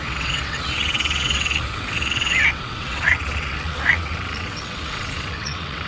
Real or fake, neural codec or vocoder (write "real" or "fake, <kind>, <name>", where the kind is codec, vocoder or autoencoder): fake, vocoder, WaveNeXt